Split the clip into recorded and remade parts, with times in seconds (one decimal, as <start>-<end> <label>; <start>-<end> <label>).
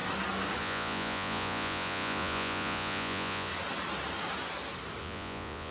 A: 0.0-0.6 recorded; 0.6-3.5 remade; 3.5-5.0 recorded; 5.0-5.7 remade